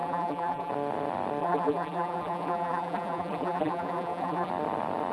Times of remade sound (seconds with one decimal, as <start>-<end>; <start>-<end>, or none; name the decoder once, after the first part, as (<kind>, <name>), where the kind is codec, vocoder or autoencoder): 0.0-0.7 (vocoder, BigVGAN v2); 1.4-4.5